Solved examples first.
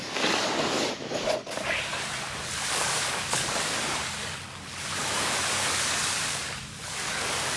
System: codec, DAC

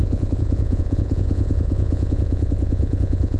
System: vocoder, Vocos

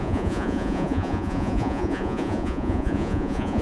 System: vocoder, Vocos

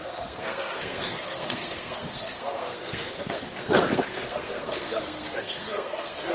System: codec, SNAC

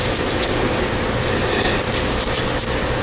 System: none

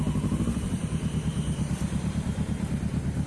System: none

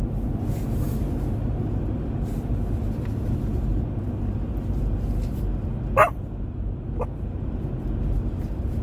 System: none